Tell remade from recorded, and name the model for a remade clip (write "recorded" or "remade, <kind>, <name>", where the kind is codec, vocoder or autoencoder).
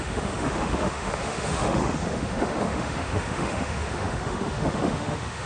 remade, autoencoder, DAC-VAE